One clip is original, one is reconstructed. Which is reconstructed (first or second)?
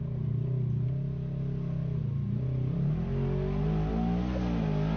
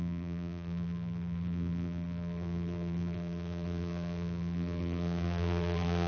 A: second